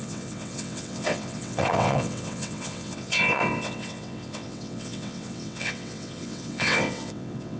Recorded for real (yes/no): no